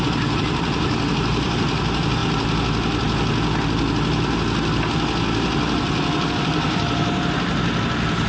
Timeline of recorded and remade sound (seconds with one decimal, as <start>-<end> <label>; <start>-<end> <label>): 0.0-2.2 remade; 2.2-6.3 recorded; 6.3-8.3 remade